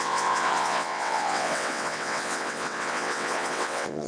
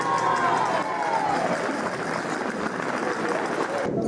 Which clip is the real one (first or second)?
second